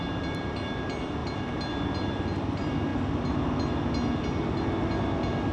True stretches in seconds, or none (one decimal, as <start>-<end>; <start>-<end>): 0.0-5.5